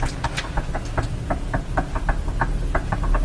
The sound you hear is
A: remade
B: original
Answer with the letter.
B